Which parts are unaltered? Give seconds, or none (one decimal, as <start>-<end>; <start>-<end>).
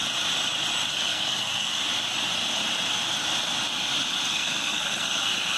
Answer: 0.0-0.9; 1.8-4.3